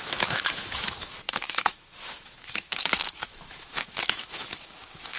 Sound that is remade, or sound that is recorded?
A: remade